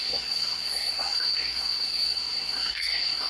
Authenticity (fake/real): fake